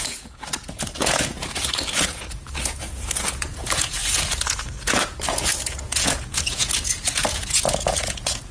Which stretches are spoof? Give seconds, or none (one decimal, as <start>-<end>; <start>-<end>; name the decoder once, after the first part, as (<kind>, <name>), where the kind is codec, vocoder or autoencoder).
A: 0.0-8.5 (vocoder, Vocos)